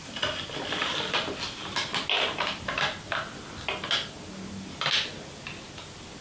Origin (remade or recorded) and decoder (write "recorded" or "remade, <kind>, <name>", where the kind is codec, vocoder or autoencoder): recorded